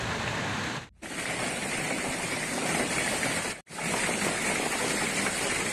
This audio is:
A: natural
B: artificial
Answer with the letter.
B